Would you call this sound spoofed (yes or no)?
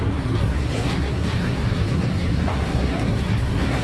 yes